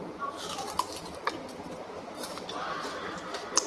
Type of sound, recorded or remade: recorded